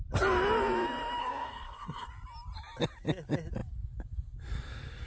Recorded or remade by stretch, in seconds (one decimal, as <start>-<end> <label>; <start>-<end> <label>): 0.0-1.2 recorded; 1.2-2.1 remade; 2.1-5.1 recorded